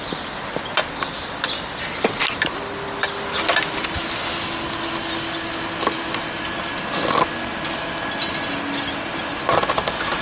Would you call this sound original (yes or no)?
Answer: yes